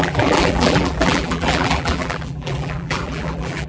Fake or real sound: fake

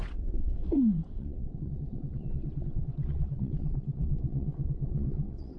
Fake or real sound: fake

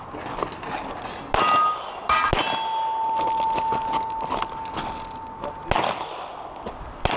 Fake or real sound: real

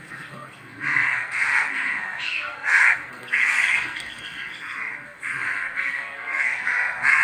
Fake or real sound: fake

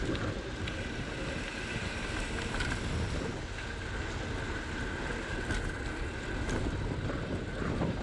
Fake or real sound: real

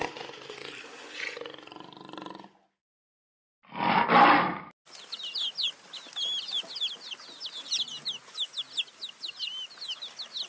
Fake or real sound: real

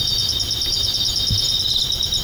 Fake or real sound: real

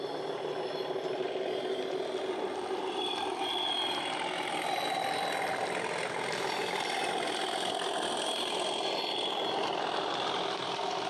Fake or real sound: real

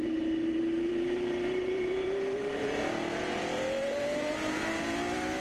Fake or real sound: fake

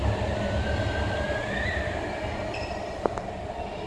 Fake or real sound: real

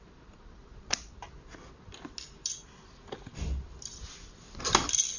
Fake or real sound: real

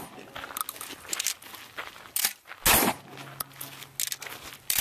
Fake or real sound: real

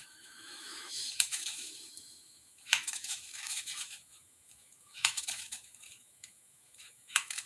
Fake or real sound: fake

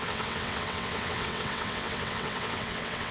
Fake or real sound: fake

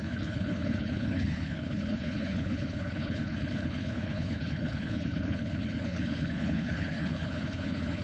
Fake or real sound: fake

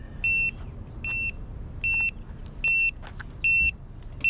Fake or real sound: real